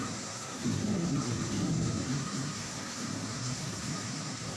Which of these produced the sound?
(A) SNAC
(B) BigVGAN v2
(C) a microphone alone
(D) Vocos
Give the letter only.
A